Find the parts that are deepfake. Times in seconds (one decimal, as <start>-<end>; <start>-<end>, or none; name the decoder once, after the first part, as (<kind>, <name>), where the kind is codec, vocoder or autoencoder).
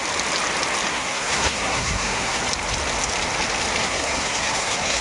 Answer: 0.9-2.4 (codec, SNAC); 3.8-5.0